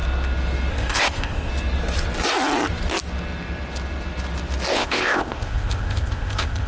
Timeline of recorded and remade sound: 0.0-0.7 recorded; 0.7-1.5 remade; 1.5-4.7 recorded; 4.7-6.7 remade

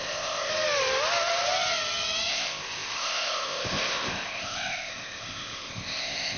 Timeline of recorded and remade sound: 0.0-0.5 remade; 0.5-2.3 recorded; 2.3-6.4 remade

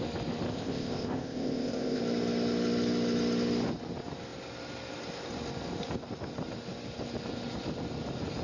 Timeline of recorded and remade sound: 0.0-0.5 recorded; 0.5-2.0 remade; 2.0-8.4 recorded

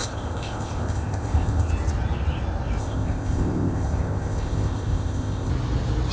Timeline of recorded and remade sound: 0.0-1.7 remade; 1.7-2.8 recorded; 2.8-5.5 remade; 5.5-6.1 recorded

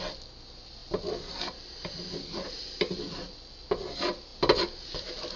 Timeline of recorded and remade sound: 0.0-5.4 recorded

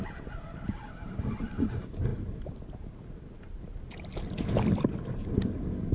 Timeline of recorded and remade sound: 0.0-5.9 recorded

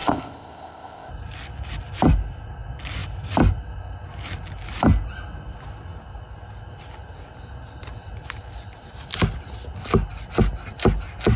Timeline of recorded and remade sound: 0.0-1.1 remade; 1.1-11.4 recorded

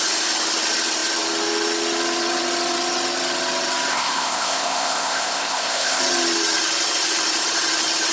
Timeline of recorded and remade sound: 0.0-3.9 recorded; 3.9-6.0 remade; 6.0-8.1 recorded